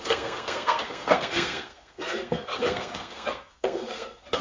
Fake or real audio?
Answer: fake